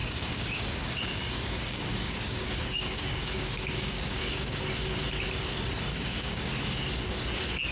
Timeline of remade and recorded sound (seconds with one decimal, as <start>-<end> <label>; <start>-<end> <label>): 0.0-4.6 remade; 4.6-5.9 recorded; 5.9-6.5 remade; 6.5-7.7 recorded